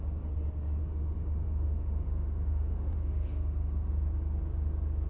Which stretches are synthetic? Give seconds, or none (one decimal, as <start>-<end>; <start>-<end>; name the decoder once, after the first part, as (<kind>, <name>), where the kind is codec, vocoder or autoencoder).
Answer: 0.8-3.9 (autoencoder, DAC-VAE)